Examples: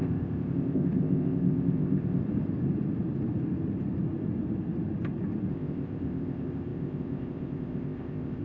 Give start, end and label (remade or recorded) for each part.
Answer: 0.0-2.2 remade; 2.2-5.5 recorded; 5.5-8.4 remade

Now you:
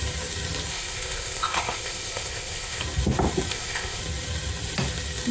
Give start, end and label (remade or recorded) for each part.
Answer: 0.0-0.7 recorded; 0.7-2.8 remade; 2.8-3.5 recorded; 3.5-4.0 remade; 4.0-5.3 recorded

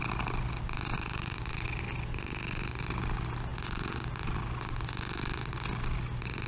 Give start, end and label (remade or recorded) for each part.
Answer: 0.0-6.5 recorded